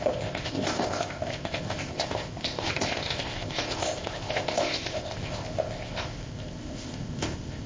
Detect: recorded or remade remade